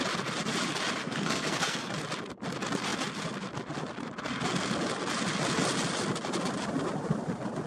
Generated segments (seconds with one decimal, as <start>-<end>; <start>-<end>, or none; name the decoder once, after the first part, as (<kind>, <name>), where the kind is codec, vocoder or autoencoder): 1.0-1.9 (codec, SNAC)